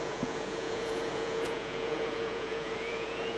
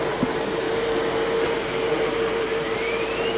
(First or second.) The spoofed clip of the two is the first